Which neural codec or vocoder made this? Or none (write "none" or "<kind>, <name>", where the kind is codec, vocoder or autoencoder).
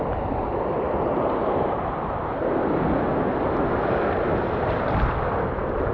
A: none